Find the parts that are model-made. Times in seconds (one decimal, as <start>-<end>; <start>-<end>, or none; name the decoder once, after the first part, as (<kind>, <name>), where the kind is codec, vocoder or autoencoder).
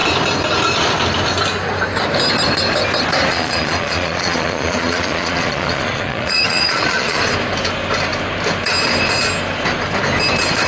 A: 3.3-7.2 (vocoder, Vocos)